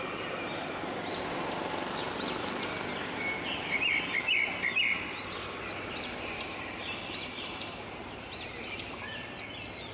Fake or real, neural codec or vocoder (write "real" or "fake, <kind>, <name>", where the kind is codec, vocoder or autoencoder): real